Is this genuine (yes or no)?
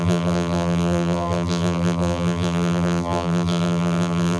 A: no